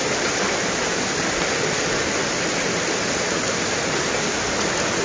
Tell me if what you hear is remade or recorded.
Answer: recorded